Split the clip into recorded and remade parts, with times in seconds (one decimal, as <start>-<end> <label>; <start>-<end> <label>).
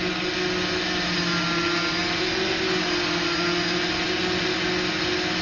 0.0-5.4 recorded